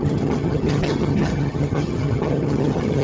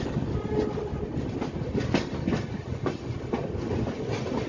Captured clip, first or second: second